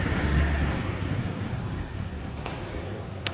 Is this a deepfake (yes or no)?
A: yes